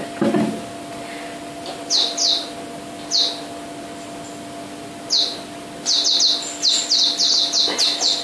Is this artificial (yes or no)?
no